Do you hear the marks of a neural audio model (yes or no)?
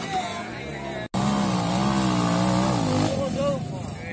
no